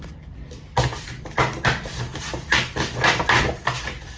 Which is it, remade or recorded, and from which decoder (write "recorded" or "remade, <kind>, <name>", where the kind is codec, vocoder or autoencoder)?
recorded